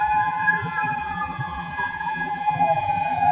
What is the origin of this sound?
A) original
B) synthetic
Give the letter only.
B